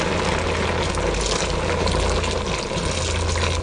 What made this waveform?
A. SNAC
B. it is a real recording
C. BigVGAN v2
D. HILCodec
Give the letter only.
B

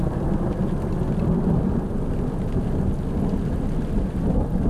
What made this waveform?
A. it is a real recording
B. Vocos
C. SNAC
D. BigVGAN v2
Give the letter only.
A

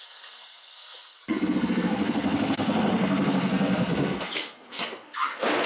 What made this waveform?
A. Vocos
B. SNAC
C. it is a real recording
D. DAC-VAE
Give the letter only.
B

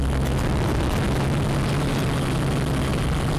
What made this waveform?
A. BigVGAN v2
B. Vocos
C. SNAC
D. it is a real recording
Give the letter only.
D